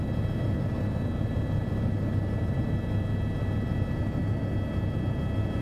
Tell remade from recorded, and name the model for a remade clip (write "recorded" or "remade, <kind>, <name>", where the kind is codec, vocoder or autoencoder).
recorded